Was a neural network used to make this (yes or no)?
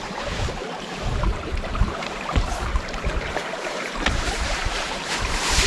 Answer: yes